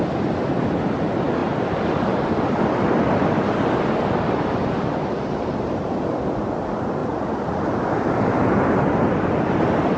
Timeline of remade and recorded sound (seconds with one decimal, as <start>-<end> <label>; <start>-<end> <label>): 0.0-7.0 recorded; 7.0-7.6 remade; 7.6-10.0 recorded